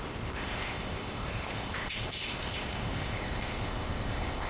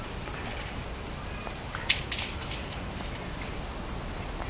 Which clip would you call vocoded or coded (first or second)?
first